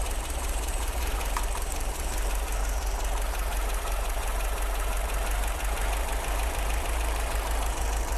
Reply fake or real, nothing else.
fake